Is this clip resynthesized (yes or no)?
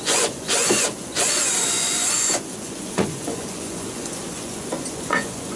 yes